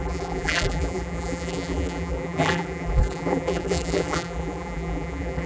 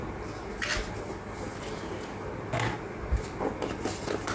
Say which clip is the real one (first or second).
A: second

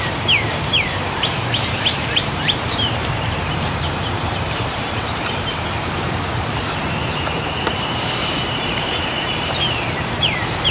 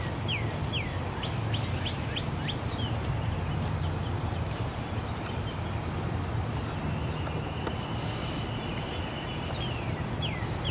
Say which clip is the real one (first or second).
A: second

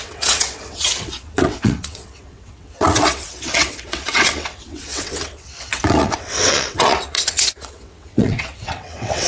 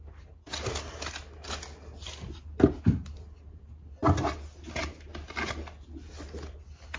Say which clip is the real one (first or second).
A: second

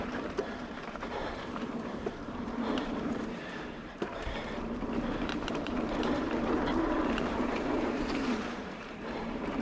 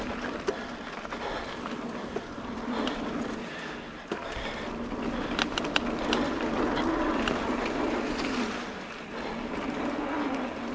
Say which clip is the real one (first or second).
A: second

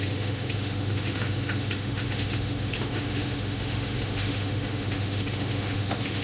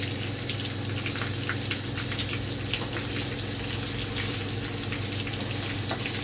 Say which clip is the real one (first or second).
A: second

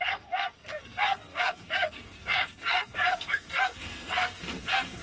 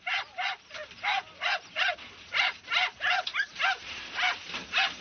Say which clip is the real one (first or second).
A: second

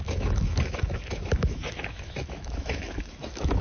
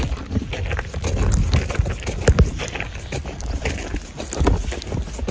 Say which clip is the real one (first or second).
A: second